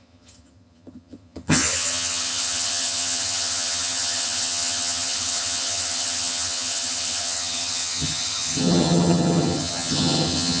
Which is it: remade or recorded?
remade